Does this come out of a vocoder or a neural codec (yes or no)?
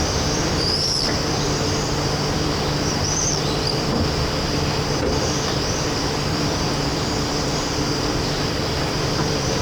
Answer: yes